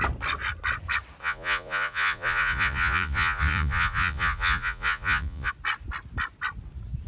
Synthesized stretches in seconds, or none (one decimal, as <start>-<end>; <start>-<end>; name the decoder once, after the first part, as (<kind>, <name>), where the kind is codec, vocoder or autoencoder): 1.2-5.5 (vocoder, Vocos)